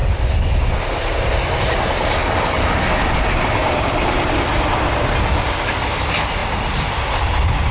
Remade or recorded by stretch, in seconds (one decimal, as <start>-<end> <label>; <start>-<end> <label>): 0.0-3.6 recorded; 3.6-4.9 remade; 4.9-7.7 recorded